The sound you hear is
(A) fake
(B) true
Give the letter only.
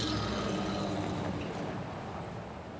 B